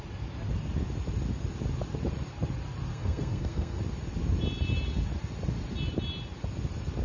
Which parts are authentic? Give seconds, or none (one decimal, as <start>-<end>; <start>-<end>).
0.0-2.9; 3.8-7.0